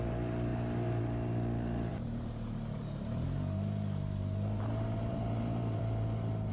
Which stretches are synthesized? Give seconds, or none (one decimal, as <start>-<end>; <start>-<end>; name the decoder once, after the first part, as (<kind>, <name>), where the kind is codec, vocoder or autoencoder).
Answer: 1.9-5.8 (vocoder, BigVGAN v2)